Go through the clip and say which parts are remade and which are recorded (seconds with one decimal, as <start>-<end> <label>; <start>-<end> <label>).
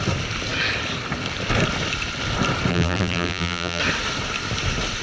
0.0-2.7 recorded; 2.7-3.8 remade; 3.8-5.0 recorded